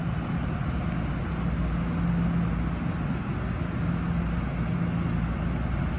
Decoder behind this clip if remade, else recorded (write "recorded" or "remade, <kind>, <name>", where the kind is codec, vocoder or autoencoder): recorded